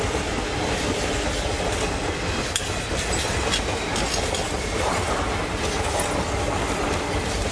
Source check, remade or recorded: recorded